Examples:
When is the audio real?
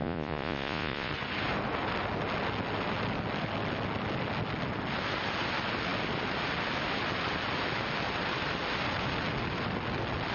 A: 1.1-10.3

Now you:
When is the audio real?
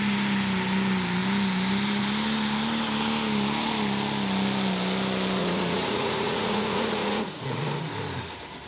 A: 0.0-5.4; 7.8-8.7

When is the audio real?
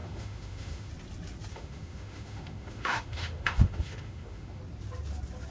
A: 0.9-1.5; 4.6-5.5